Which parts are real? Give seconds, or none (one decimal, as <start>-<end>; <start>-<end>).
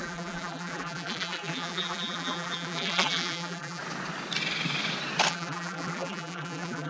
3.8-5.3